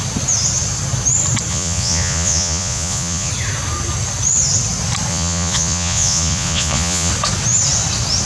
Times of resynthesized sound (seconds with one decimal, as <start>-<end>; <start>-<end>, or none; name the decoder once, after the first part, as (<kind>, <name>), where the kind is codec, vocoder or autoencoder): 1.5-3.3 (vocoder, Vocos); 5.1-7.1